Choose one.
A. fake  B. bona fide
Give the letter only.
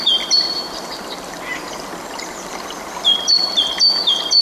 A